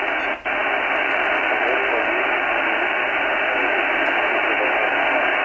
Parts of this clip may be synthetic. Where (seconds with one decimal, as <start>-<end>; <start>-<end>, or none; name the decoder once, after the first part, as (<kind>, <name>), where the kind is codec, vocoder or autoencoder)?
none